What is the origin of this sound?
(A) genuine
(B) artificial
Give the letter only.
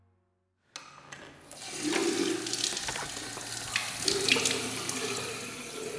A